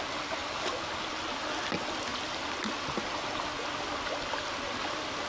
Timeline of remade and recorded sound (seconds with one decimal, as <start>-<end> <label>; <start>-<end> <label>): 0.0-5.3 recorded